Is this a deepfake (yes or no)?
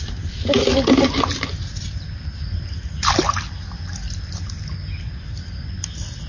no